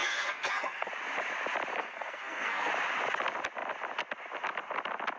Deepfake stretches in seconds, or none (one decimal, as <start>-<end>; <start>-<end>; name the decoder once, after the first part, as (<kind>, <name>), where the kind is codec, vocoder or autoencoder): 0.0-0.9 (codec, SNAC); 1.8-2.7